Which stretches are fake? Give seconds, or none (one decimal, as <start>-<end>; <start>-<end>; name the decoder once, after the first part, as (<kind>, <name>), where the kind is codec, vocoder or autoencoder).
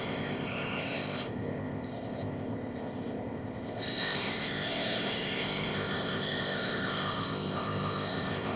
0.0-8.6 (codec, ZipCodec)